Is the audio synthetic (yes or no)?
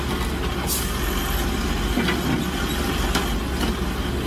no